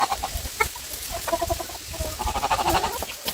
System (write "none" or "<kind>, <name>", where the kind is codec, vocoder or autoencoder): none